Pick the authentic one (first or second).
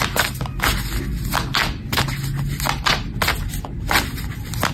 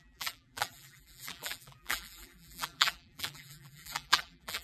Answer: first